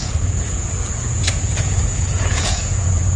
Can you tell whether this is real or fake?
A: fake